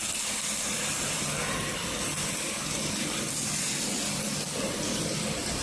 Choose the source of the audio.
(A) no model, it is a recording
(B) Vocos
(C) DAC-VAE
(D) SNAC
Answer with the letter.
A